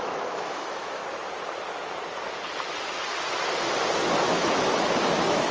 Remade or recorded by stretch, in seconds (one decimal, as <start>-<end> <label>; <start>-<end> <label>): 0.0-1.0 remade; 1.0-4.3 recorded; 4.3-5.5 remade